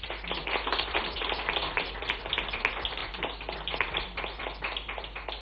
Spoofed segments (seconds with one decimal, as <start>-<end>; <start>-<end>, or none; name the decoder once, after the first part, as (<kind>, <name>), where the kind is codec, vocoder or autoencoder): none